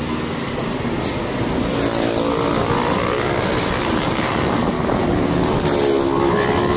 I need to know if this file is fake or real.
real